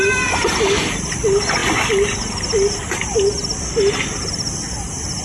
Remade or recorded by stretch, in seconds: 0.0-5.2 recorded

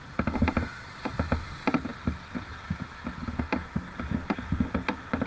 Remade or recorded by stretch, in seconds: 0.0-5.3 recorded

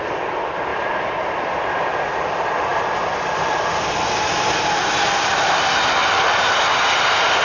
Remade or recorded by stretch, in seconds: 0.0-0.7 recorded; 0.7-1.4 remade; 1.4-2.7 recorded; 2.7-4.8 remade; 4.8-6.0 recorded; 6.0-6.5 remade; 6.5-7.4 recorded